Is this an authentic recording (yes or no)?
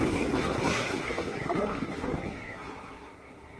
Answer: no